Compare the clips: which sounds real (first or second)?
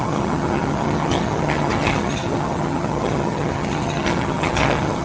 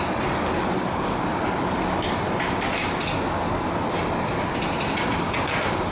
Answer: second